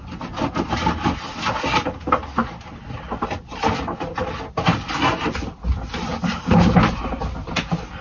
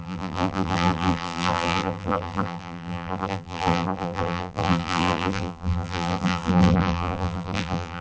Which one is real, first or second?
first